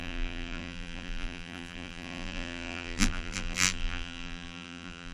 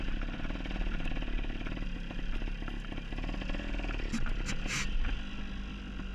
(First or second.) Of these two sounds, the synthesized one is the first